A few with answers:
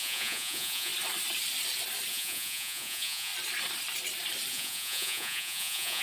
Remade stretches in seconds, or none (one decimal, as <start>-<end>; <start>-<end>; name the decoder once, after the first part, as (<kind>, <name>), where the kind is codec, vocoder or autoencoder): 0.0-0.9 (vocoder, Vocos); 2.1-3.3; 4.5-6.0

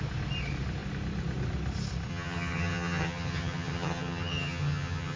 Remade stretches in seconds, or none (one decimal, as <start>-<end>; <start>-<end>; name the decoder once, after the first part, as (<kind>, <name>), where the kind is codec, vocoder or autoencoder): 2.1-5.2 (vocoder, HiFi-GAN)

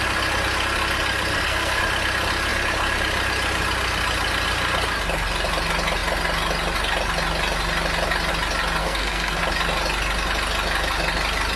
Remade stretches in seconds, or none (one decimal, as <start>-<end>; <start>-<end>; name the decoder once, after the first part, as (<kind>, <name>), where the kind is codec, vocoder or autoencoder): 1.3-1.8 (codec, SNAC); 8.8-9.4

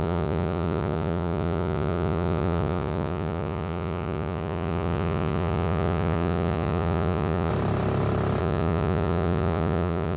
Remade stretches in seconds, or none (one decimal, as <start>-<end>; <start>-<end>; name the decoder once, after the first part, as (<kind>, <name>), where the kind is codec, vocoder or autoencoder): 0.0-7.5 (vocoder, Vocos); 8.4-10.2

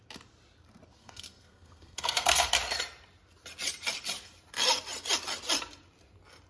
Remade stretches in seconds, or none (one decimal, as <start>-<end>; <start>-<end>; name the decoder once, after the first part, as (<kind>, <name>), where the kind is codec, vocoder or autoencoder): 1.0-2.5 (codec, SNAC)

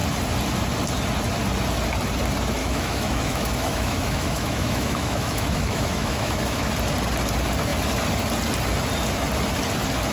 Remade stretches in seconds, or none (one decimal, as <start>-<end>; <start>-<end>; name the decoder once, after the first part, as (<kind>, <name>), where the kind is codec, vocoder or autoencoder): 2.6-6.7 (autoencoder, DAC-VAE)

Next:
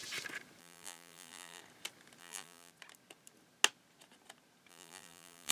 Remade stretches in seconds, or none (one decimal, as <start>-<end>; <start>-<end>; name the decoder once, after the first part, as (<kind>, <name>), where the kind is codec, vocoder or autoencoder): 0.6-1.6 (vocoder, BigVGAN v2); 2.2-2.7; 4.7-5.5